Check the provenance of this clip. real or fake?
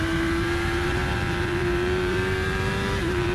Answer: fake